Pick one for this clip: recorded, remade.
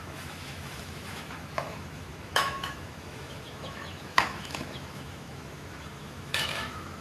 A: remade